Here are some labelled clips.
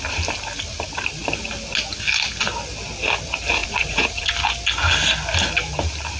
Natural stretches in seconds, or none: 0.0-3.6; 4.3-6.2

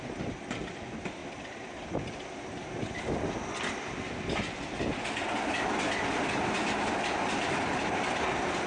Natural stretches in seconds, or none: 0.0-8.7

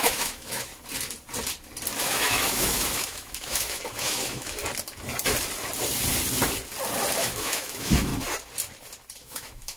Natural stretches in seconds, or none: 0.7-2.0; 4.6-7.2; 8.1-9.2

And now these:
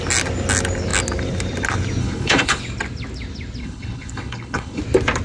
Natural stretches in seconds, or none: 0.0-2.0; 2.6-3.6; 4.8-5.2